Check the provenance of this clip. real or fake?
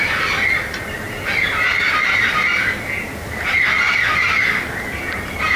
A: real